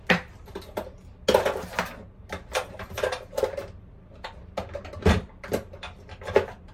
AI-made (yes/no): no